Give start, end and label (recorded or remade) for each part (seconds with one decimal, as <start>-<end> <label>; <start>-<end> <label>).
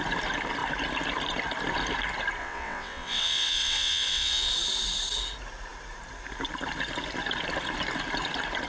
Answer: 0.0-2.4 recorded; 2.4-4.5 remade; 4.5-8.7 recorded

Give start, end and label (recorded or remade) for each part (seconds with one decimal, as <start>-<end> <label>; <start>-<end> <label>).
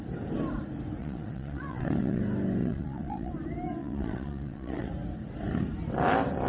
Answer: 0.0-1.0 recorded; 1.0-2.2 remade; 2.2-2.6 recorded; 2.6-3.3 remade; 3.3-3.8 recorded; 3.8-4.9 remade; 4.9-6.5 recorded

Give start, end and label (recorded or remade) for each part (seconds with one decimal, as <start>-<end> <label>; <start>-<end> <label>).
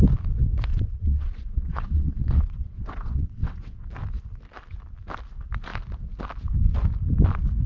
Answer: 0.0-0.7 recorded; 0.7-3.9 remade; 3.9-7.7 recorded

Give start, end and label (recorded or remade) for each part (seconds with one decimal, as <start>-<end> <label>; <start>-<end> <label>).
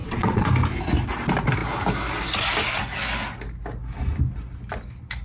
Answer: 0.0-0.5 remade; 0.5-5.2 recorded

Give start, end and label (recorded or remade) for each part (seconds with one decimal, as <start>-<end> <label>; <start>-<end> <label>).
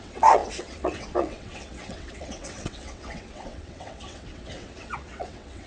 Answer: 0.0-5.7 remade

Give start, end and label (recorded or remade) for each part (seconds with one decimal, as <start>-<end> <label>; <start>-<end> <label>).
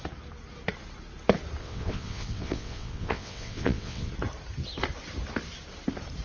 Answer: 0.0-1.6 recorded; 1.6-4.1 remade; 4.1-6.2 recorded